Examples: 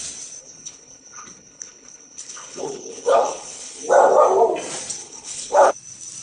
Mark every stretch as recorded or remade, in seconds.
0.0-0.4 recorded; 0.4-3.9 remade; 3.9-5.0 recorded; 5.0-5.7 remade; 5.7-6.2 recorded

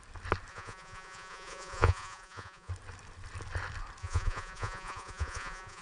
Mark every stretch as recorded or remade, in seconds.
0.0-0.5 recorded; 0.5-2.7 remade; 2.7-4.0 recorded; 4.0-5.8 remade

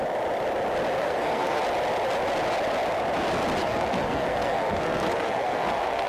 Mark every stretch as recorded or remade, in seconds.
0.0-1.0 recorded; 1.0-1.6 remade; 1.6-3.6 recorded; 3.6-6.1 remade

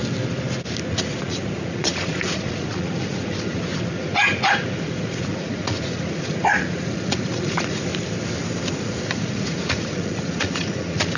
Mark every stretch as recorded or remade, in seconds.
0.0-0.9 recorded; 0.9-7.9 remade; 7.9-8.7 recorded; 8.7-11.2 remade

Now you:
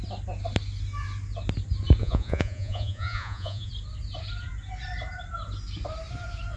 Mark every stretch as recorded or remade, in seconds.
0.0-2.0 recorded; 2.0-3.7 remade; 3.7-6.6 recorded